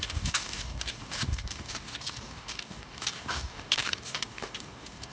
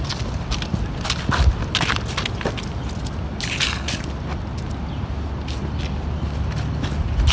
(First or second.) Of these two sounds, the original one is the second